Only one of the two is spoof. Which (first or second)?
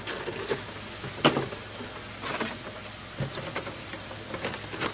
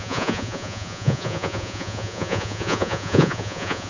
second